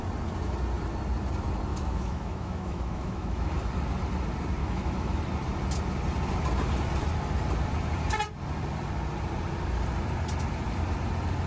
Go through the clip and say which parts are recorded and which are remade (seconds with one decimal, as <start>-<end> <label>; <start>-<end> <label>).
0.0-1.7 recorded; 1.7-3.6 remade; 3.6-4.6 recorded; 4.6-5.2 remade; 5.2-11.5 recorded